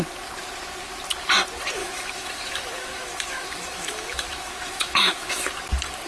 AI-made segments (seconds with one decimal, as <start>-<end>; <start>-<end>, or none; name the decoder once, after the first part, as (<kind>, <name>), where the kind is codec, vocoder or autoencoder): 1.8-5.5 (autoencoder, DAC-VAE)